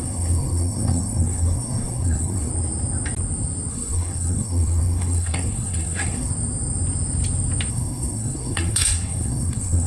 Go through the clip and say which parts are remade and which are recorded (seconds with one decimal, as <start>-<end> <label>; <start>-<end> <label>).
0.0-2.5 remade; 2.5-3.7 recorded; 3.7-6.3 remade; 6.3-7.7 recorded; 7.7-9.9 remade